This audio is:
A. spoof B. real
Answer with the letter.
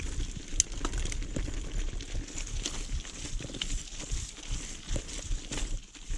B